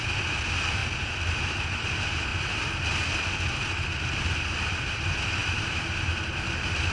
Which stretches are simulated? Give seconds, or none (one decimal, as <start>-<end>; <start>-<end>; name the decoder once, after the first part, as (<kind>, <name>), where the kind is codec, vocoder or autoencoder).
none